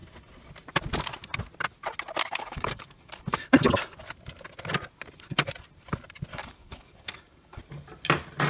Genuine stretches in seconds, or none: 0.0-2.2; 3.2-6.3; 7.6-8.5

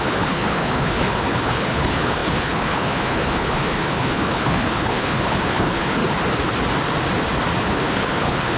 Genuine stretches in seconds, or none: 6.0-7.6

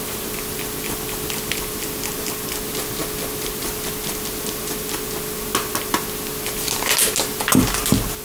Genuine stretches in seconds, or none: 0.0-8.2